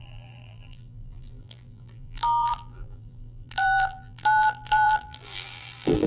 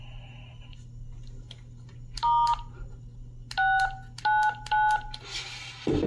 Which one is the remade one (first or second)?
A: first